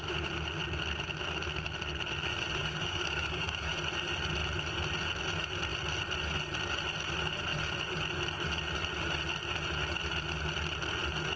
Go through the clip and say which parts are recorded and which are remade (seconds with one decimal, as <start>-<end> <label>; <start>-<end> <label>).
0.0-2.6 recorded; 2.6-3.7 remade; 3.7-11.4 recorded